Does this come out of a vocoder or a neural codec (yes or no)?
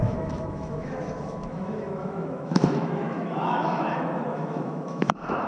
yes